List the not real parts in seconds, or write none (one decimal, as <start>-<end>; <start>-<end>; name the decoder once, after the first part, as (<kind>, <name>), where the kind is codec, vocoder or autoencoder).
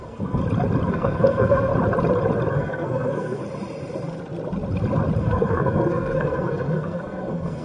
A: 0.0-0.4 (codec, SNAC); 0.9-1.7; 2.5-3.4; 5.2-7.6